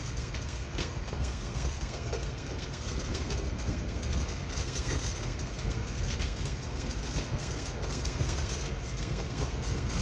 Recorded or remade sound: remade